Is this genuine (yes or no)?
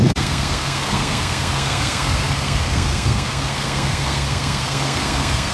no